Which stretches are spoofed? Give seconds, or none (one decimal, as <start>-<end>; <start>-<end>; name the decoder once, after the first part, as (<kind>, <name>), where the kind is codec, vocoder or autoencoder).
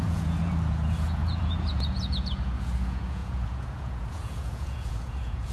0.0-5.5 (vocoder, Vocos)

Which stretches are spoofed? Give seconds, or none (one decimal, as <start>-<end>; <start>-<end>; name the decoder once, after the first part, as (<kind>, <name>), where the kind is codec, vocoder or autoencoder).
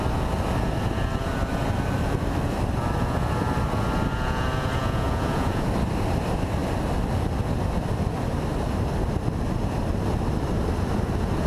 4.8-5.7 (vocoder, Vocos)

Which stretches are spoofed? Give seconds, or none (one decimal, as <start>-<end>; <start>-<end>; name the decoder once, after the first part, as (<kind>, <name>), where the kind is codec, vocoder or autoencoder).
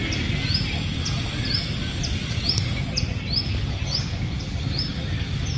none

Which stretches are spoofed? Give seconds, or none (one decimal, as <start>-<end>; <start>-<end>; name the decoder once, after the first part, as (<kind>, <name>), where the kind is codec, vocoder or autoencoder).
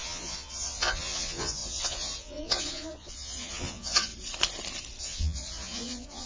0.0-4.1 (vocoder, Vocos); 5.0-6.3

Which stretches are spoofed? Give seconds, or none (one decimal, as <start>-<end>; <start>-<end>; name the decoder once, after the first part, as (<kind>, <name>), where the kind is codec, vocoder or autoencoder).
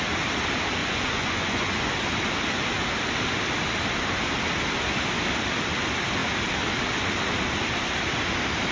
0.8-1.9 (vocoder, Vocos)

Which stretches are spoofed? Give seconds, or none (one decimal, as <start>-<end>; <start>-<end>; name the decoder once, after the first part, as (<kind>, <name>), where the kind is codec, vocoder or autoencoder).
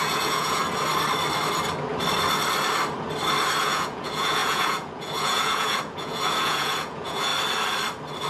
0.0-0.6 (vocoder, Vocos); 3.6-7.3